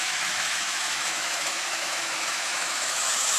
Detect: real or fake fake